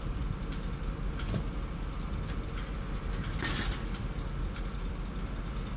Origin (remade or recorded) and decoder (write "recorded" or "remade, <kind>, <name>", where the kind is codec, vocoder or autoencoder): recorded